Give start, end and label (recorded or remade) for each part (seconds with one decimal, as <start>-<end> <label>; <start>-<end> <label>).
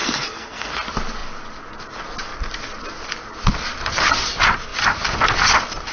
0.0-0.7 remade; 0.7-5.9 recorded